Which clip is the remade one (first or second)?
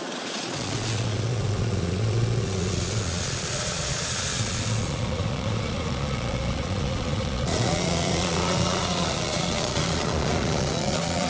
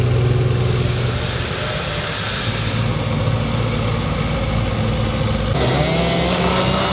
first